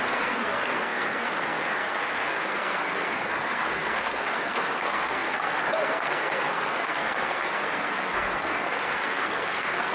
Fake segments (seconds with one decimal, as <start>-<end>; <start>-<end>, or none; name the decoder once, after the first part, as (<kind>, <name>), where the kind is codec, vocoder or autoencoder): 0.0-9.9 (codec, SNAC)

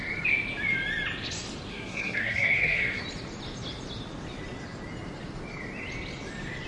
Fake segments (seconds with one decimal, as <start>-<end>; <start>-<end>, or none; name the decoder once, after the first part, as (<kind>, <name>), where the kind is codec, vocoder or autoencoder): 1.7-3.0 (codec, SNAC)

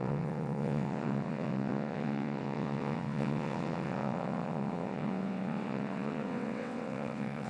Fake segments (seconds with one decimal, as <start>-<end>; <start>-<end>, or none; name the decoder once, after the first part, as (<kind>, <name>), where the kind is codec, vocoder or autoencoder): 0.0-7.5 (vocoder, WaveNeXt)